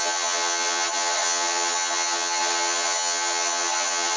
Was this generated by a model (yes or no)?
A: yes